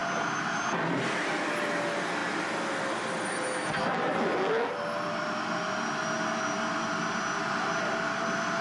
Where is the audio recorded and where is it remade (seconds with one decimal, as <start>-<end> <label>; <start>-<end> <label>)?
0.0-1.3 remade; 1.3-8.6 recorded